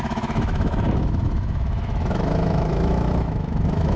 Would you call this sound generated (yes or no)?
yes